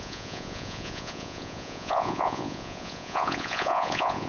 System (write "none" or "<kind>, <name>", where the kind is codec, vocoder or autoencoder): vocoder, Vocos